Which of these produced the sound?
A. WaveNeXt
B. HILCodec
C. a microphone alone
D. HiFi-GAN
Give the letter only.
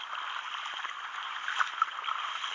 C